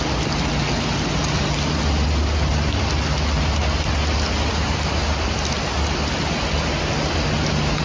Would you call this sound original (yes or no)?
yes